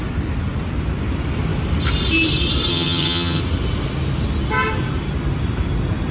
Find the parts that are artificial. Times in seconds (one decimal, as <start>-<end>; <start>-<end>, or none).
2.7-3.4